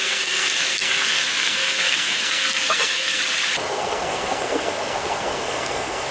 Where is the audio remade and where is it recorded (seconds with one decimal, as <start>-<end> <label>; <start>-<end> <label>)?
0.0-3.2 remade; 3.2-3.6 recorded; 3.6-6.1 remade